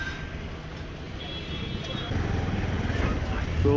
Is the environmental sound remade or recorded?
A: recorded